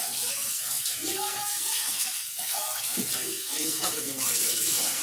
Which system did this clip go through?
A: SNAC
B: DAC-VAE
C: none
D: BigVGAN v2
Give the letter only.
A